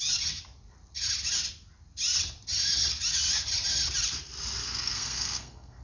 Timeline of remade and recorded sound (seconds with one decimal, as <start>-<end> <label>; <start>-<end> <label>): 0.0-4.6 recorded; 4.6-5.8 remade